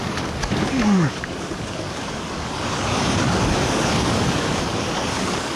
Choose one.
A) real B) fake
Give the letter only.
B